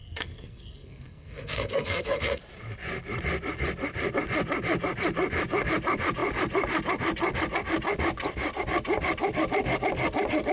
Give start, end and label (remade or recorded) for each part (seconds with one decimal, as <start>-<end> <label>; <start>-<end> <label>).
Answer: 0.0-2.4 remade; 2.4-10.5 recorded